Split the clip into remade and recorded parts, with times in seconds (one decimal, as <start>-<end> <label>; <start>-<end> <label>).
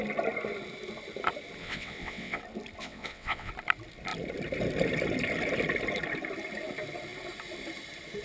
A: 0.0-1.6 recorded; 1.6-2.4 remade; 2.4-2.8 recorded; 2.8-3.5 remade; 3.5-8.2 recorded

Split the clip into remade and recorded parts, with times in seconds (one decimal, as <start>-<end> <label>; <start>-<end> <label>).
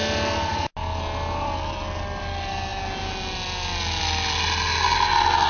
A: 0.0-5.5 recorded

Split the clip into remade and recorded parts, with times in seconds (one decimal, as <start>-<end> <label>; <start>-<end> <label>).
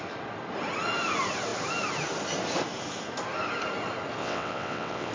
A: 0.0-4.2 recorded; 4.2-5.1 remade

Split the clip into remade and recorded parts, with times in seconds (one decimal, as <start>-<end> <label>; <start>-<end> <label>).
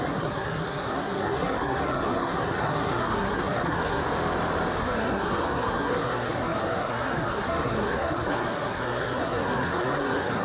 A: 0.0-4.0 remade; 4.0-4.8 recorded; 4.8-10.4 remade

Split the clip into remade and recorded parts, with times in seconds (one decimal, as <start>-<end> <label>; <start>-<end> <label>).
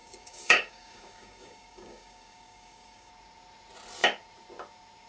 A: 0.0-3.1 remade; 3.1-5.1 recorded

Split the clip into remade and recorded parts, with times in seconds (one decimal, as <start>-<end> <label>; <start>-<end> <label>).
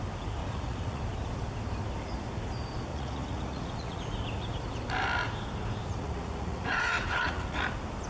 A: 0.0-0.4 recorded; 0.4-1.0 remade; 1.0-2.9 recorded; 2.9-4.0 remade; 4.0-5.9 recorded; 5.9-7.6 remade; 7.6-8.1 recorded